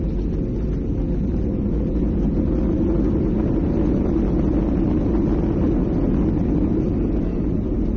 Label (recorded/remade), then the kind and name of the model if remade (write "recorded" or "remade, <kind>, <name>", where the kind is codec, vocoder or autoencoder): recorded